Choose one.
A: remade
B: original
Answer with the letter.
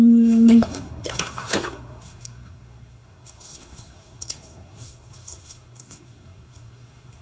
A